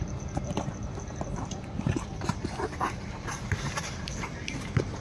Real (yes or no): no